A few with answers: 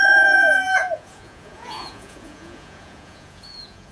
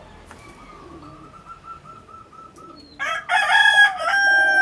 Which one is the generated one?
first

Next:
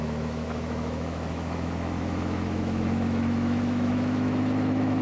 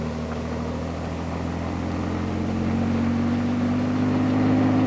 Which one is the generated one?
first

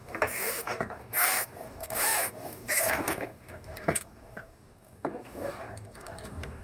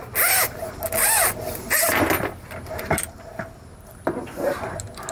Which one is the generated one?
first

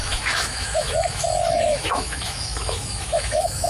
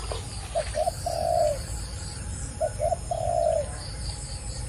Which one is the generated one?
first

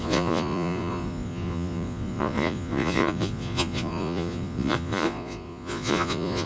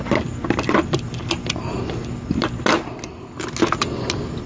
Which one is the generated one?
first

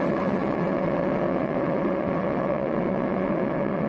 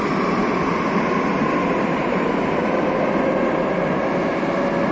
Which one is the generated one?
first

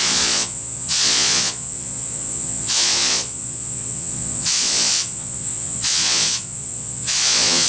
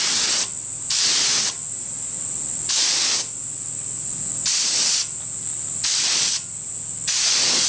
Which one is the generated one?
first